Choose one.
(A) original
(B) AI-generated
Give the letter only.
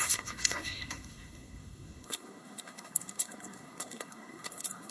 B